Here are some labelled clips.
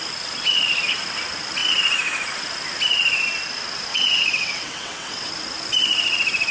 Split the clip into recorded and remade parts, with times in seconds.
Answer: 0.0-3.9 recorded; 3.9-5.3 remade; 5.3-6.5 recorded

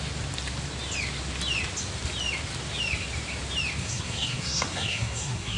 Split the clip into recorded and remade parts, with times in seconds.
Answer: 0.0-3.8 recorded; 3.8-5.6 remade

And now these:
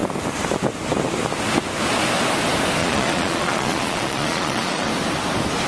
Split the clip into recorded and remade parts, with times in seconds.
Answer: 0.0-2.8 recorded; 2.8-4.9 remade; 4.9-5.7 recorded